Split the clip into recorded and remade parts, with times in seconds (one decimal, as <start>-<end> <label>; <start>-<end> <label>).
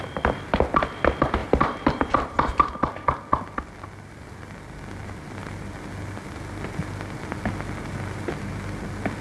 0.0-1.4 recorded; 1.4-2.6 remade; 2.6-9.2 recorded